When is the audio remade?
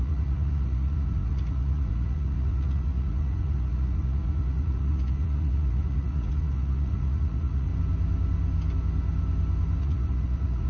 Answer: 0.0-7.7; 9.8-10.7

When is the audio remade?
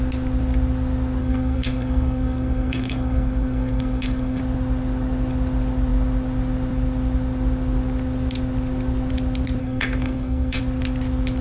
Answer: 1.2-4.4; 9.6-10.6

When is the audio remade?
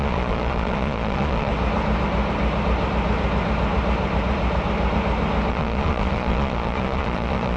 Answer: 0.0-1.5; 5.5-7.6